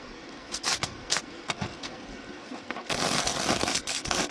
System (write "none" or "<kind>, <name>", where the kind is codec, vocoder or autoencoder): codec, SNAC